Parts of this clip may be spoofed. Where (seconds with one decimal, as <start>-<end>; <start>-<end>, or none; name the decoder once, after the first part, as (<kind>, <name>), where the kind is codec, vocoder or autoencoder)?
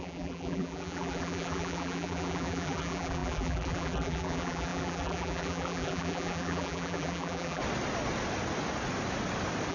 0.0-7.6 (vocoder, BigVGAN v2)